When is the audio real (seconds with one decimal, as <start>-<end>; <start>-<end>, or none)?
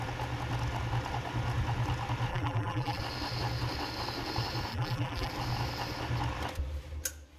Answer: 0.0-2.3; 3.0-4.7; 5.3-7.4